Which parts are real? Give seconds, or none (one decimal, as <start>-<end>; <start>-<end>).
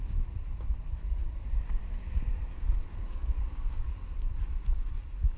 0.0-5.4